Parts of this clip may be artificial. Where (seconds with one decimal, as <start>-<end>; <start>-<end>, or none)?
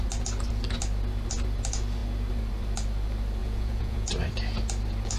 3.4-4.1